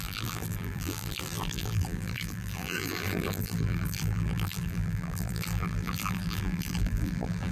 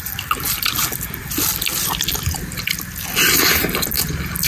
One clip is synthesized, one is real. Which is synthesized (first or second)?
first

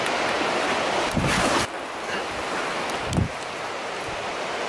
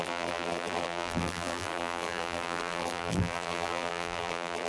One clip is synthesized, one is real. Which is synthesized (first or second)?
second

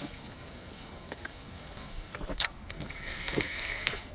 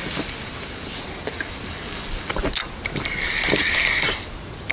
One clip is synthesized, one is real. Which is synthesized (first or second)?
first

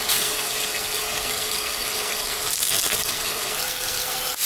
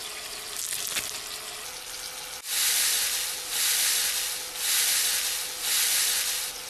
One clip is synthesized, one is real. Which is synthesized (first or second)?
first